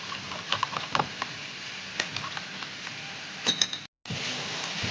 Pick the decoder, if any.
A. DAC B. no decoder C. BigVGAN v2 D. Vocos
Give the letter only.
B